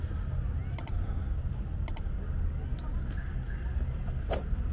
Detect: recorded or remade recorded